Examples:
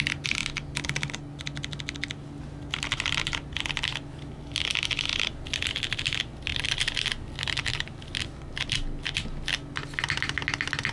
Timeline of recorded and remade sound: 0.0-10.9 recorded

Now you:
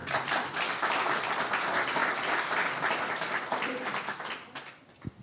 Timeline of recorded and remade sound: 0.0-5.2 recorded